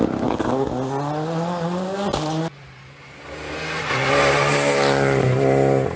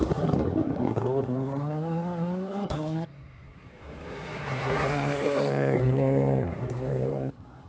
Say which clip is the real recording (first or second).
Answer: first